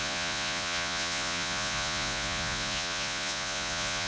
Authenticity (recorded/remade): remade